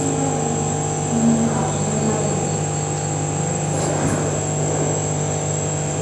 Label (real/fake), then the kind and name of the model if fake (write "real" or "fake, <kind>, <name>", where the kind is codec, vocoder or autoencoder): real